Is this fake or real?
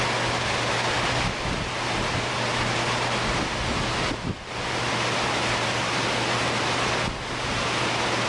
real